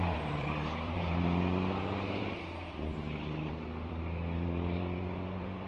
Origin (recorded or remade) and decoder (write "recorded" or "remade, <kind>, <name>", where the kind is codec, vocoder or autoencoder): remade, vocoder, BigVGAN v2